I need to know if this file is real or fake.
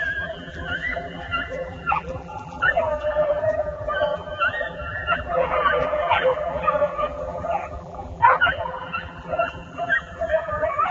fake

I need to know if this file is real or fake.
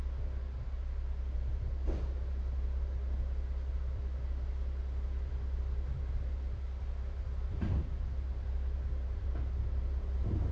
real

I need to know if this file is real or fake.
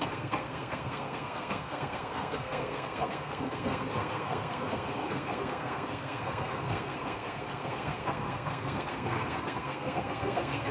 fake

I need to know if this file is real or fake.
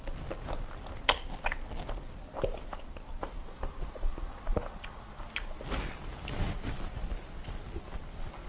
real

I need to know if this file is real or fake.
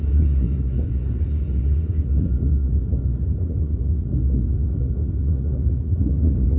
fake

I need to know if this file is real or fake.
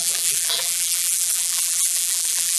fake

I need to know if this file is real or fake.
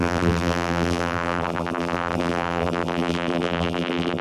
fake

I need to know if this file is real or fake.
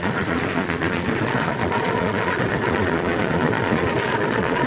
fake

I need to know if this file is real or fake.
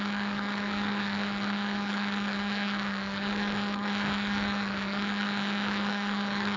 fake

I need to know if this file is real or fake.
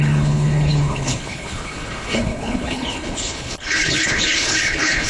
fake